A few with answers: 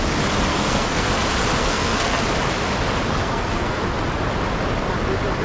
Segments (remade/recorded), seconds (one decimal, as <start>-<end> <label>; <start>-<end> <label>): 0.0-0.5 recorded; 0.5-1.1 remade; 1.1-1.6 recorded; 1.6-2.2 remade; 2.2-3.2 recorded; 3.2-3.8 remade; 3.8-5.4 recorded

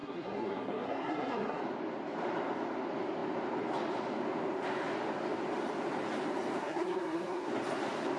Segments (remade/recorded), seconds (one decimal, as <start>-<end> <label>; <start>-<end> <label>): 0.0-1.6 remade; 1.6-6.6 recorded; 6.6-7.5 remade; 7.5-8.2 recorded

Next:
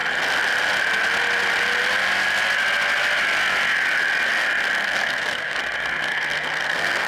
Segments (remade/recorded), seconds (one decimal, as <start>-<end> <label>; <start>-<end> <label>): 0.0-4.8 recorded; 4.8-5.6 remade; 5.6-6.1 recorded; 6.1-7.1 remade